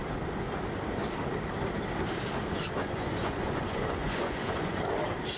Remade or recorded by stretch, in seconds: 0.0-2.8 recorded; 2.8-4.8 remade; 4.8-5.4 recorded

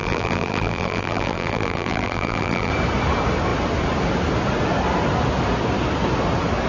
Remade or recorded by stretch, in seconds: 0.0-2.7 remade; 2.7-6.7 recorded